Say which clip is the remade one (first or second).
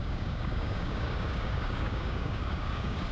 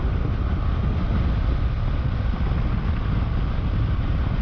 first